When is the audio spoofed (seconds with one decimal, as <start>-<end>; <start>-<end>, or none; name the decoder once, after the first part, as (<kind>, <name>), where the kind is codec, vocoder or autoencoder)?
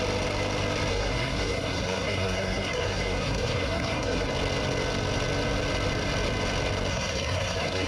0.9-4.3 (codec, SNAC); 6.9-7.9